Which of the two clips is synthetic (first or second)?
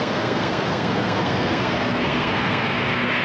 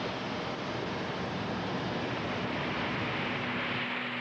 first